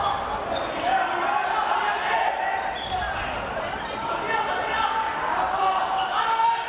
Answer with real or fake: real